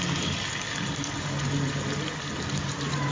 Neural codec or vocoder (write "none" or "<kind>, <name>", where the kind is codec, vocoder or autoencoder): none